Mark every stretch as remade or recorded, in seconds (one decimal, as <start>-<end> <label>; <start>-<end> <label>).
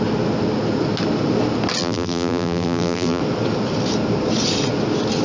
0.0-1.8 recorded; 1.8-3.2 remade; 3.2-5.2 recorded